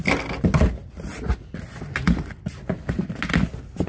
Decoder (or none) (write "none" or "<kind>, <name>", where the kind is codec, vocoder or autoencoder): none